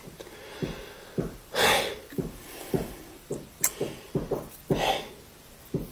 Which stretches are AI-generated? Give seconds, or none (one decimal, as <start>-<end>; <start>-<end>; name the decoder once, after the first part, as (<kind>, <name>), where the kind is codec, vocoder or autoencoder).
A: 0.6-4.1 (vocoder, BigVGAN v2)